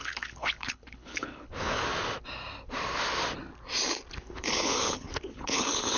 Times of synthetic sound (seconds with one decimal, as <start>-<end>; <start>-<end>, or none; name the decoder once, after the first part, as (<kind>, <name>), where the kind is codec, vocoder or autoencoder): 0.0-1.8 (codec, HILCodec); 4.2-6.0